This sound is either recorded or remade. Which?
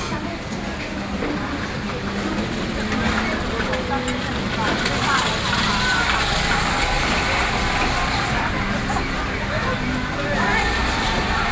recorded